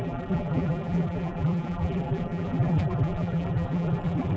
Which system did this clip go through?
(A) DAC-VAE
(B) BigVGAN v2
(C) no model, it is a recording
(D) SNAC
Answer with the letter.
B